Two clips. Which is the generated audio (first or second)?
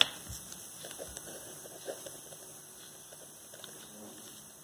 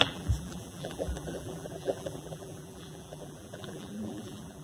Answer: second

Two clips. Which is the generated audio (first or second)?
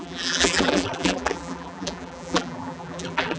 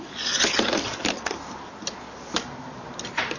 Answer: first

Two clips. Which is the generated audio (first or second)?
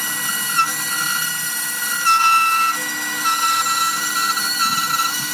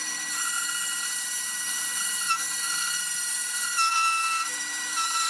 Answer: second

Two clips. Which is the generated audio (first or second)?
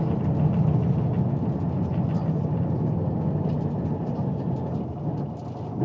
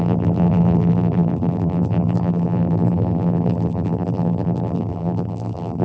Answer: second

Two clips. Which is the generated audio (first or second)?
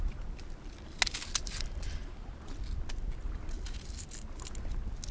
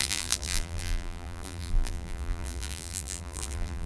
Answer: second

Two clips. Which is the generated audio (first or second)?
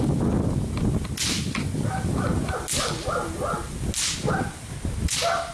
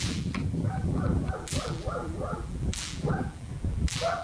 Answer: second